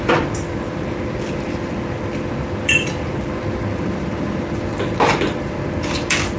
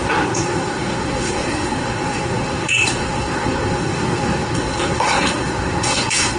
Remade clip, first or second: second